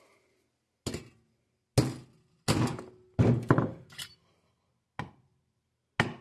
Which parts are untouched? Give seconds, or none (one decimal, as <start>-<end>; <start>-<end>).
0.0-3.3; 4.1-6.2